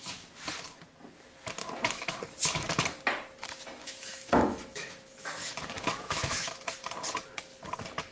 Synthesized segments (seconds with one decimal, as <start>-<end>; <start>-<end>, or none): 1.6-2.1; 3.8-6.6